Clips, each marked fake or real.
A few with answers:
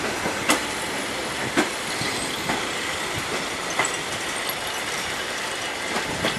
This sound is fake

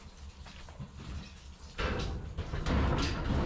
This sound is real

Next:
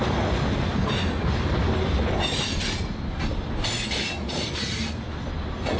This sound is real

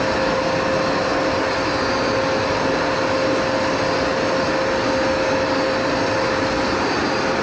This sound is real